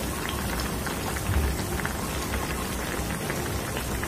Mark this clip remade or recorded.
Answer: recorded